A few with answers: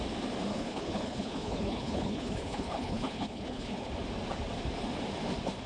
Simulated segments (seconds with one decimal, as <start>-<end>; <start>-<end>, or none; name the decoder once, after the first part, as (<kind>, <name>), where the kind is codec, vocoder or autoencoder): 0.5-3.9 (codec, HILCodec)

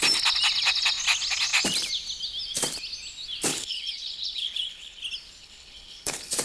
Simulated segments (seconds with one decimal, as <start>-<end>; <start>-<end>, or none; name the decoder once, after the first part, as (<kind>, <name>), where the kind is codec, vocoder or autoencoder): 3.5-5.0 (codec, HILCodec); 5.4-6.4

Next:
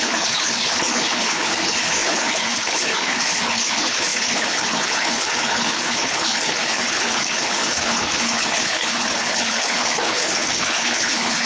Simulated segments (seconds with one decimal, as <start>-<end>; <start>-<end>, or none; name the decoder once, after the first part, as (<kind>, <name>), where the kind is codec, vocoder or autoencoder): 0.0-11.5 (codec, HILCodec)